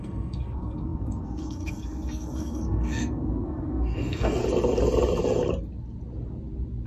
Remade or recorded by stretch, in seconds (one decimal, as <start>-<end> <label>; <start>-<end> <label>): 0.0-4.4 remade; 4.4-6.9 recorded